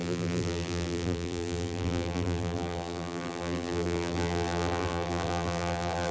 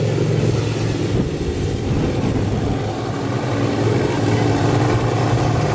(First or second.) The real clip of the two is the second